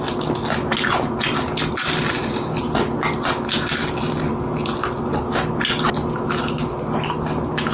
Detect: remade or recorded recorded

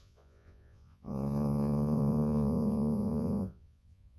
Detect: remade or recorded remade